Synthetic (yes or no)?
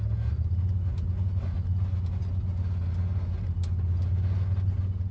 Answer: no